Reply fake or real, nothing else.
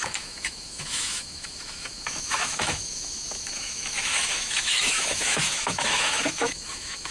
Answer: fake